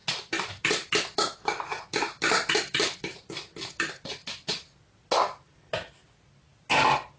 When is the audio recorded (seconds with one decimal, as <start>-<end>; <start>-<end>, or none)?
0.0-7.2